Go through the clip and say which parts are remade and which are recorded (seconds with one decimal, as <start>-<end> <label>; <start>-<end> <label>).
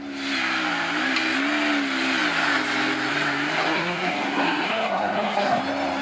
0.0-3.6 recorded; 3.6-5.6 remade; 5.6-6.0 recorded